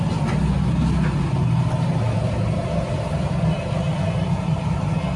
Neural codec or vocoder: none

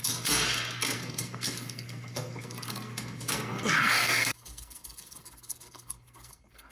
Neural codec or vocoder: codec, SNAC